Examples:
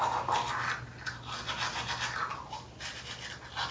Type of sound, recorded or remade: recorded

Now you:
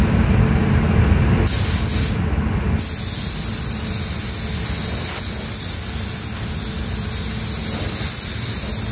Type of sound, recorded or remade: recorded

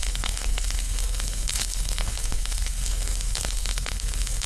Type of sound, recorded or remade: remade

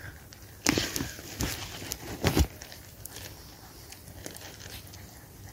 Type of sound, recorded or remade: remade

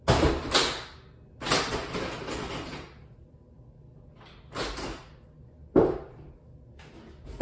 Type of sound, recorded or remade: recorded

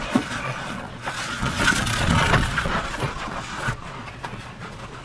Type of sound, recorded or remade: remade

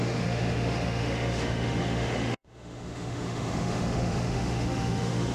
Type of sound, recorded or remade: remade